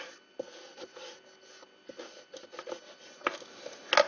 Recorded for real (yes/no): yes